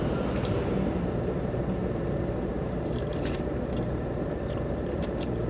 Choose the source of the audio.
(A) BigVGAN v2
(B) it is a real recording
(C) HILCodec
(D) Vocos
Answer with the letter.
A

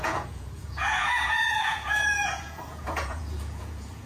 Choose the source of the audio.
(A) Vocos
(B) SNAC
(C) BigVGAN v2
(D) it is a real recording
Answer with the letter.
A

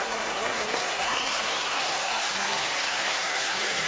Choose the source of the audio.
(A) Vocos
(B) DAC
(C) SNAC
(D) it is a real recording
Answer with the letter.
C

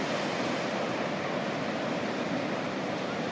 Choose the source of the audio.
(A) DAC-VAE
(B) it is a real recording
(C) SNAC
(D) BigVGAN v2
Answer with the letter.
B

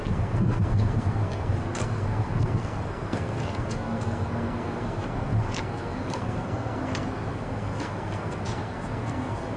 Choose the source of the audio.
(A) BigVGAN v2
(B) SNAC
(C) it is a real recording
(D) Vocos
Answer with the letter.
B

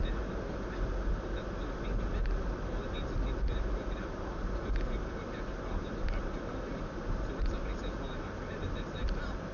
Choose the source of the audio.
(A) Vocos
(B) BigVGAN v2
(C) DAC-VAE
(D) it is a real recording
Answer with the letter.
D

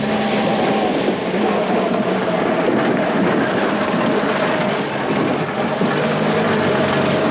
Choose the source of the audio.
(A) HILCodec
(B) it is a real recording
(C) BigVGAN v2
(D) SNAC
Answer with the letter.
B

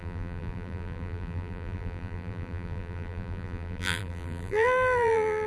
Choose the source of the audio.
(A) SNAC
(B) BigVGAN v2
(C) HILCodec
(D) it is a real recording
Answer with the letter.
B